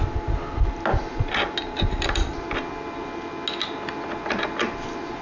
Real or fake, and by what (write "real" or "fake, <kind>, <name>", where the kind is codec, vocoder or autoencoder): real